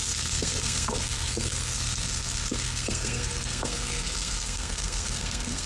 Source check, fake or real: fake